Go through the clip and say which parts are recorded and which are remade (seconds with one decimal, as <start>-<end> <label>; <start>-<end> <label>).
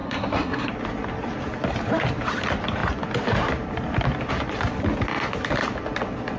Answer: 0.0-0.7 remade; 0.7-6.4 recorded